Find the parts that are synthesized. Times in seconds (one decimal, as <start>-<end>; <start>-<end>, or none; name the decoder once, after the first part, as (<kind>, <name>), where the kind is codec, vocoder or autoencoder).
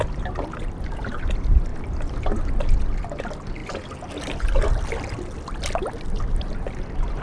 none